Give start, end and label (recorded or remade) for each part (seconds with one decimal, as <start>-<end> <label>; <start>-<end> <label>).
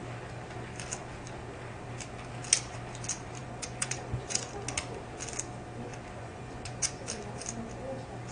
0.0-3.4 recorded; 3.4-4.5 remade; 4.5-6.2 recorded; 6.2-7.0 remade; 7.0-8.3 recorded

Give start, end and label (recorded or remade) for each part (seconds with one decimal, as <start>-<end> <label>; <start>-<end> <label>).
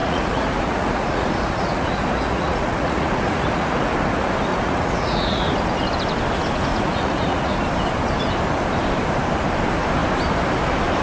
0.0-3.9 remade; 3.9-4.5 recorded; 4.5-5.5 remade; 5.5-6.7 recorded; 6.7-7.6 remade; 7.6-11.0 recorded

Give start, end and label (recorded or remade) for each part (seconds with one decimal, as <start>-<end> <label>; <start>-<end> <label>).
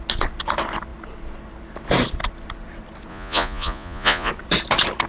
0.0-3.1 recorded; 3.1-4.3 remade; 4.3-5.1 recorded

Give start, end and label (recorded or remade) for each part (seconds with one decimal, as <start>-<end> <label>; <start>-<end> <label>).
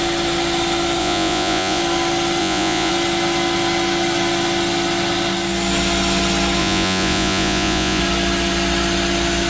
0.0-1.0 recorded; 1.0-1.8 remade; 1.8-2.4 recorded; 2.4-2.9 remade; 2.9-6.6 recorded; 6.6-8.0 remade; 8.0-9.5 recorded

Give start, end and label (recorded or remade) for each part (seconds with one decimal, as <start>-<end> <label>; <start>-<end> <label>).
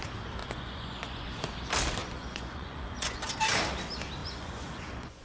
0.0-0.4 recorded; 0.4-1.4 remade; 1.4-2.0 recorded; 2.0-3.3 remade; 3.3-4.2 recorded; 4.2-5.2 remade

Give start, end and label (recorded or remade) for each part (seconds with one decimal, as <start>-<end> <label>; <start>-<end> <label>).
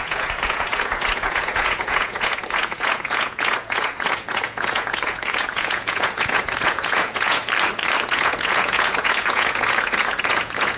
0.0-7.4 remade; 7.4-8.1 recorded; 8.1-10.8 remade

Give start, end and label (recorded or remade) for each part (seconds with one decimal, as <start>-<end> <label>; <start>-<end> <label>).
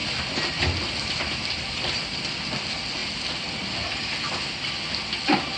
0.0-5.6 recorded